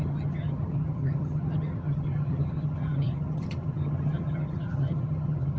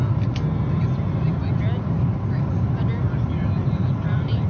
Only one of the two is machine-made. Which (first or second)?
first